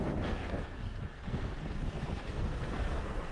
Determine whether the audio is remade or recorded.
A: remade